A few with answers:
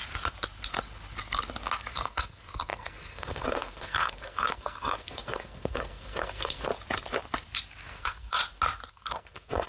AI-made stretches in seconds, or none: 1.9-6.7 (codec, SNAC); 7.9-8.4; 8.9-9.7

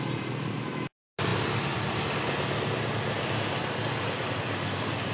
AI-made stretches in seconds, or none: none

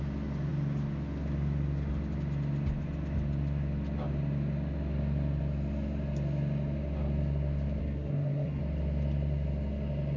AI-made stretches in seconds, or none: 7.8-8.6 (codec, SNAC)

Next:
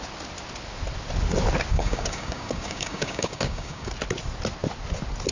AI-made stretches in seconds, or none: 1.7-3.9 (codec, DAC)

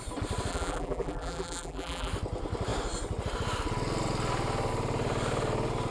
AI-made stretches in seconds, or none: 0.5-2.1 (vocoder, BigVGAN v2)